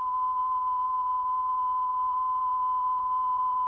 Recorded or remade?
remade